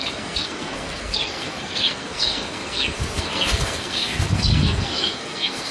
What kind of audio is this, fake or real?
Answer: fake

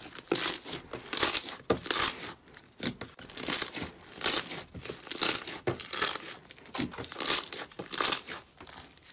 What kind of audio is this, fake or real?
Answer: real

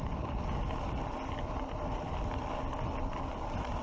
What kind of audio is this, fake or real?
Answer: real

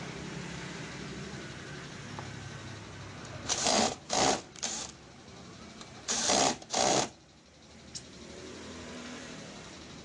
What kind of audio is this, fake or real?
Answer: fake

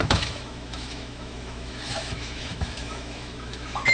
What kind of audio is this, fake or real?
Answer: fake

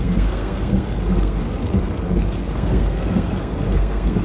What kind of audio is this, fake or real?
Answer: fake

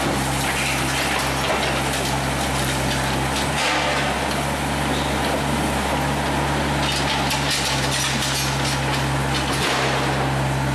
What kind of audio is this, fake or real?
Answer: real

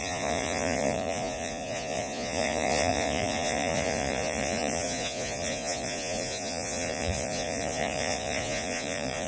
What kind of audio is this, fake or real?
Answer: fake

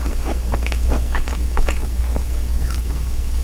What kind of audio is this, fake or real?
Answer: fake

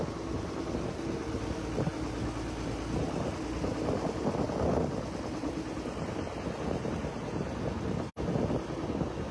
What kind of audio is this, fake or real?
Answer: real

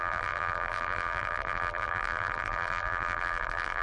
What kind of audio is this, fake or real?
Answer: fake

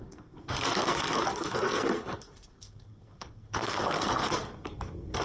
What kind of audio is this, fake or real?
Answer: fake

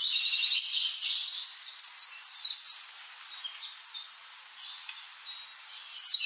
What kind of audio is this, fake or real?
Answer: real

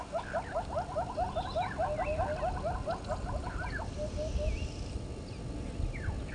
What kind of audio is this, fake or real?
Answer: real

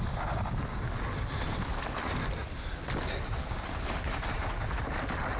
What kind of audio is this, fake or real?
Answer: real